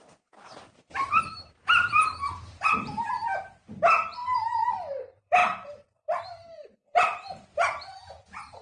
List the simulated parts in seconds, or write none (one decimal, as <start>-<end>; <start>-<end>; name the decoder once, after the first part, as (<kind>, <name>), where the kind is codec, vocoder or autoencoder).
0.0-4.2 (vocoder, BigVGAN v2); 4.7-8.6